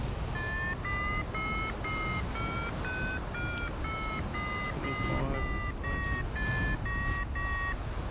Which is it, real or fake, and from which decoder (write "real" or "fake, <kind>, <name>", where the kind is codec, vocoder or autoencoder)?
real